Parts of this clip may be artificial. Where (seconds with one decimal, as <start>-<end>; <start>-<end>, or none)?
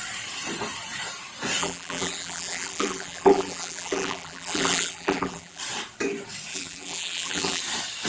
1.6-5.6; 6.5-7.6